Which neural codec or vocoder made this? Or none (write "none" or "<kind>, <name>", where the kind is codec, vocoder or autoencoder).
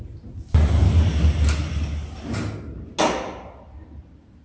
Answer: none